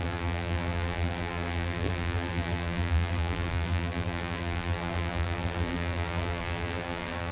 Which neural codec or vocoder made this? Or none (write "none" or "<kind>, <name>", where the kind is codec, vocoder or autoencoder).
vocoder, BigVGAN v2